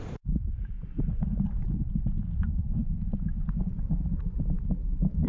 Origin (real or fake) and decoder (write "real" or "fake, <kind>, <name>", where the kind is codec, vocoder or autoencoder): real